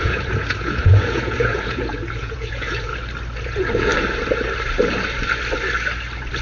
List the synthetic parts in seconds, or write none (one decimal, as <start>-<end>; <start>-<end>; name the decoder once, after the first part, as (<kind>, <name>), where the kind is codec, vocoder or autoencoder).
0.0-2.9 (vocoder, Vocos); 3.4-3.9

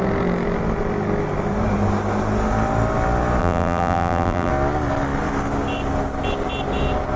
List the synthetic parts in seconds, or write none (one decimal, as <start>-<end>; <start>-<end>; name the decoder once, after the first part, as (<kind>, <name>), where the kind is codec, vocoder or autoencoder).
3.4-4.5 (vocoder, BigVGAN v2)

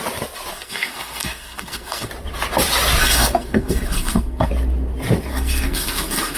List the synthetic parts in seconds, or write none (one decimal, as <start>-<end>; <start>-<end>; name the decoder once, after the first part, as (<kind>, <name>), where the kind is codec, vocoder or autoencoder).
0.5-2.1 (codec, SNAC); 3.0-4.5; 5.3-6.4

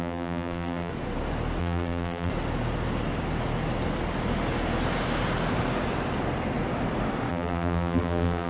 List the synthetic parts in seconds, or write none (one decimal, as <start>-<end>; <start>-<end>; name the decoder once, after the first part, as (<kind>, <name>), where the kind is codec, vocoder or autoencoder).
0.0-0.9 (vocoder, BigVGAN v2); 1.6-2.3; 7.3-8.5

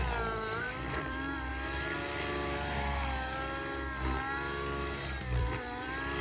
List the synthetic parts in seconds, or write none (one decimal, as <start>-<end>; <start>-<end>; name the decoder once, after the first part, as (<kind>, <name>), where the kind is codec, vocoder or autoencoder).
0.0-1.5 (vocoder, BigVGAN v2); 5.2-6.2

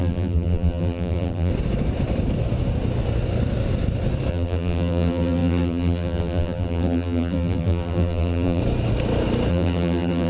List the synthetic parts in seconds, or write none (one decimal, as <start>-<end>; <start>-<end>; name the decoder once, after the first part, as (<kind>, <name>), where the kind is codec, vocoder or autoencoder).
0.0-1.5 (vocoder, BigVGAN v2); 4.3-8.6; 9.5-10.3

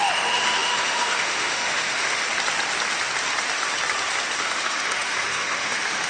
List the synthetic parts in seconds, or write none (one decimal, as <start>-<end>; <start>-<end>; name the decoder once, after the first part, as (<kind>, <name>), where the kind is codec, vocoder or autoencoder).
0.0-2.2 (autoencoder, DAC-VAE); 4.4-6.1